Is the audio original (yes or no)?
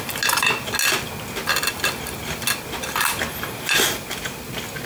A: yes